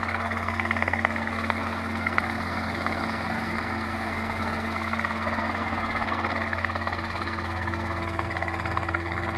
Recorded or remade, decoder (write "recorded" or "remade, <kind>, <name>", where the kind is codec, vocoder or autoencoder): remade, codec, SNAC